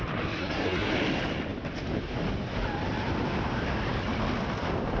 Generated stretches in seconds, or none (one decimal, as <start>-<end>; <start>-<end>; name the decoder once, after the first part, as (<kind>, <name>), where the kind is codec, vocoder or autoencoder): 0.4-0.9 (codec, SNAC)